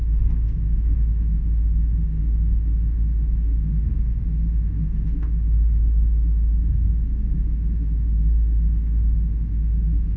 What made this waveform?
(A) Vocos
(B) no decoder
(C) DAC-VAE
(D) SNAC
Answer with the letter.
C